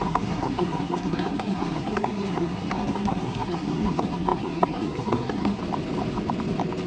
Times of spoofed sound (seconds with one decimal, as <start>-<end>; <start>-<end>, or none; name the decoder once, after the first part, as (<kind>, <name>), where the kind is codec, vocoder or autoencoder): 0.0-5.6 (codec, SNAC)